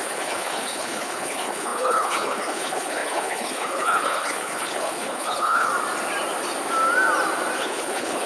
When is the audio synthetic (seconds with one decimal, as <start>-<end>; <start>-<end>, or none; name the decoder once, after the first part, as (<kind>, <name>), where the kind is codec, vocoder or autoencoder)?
0.0-5.7 (codec, HILCodec); 7.6-8.3